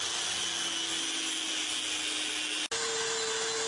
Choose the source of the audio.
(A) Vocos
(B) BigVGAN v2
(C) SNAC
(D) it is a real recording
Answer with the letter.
D